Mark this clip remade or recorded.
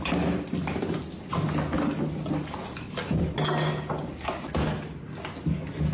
recorded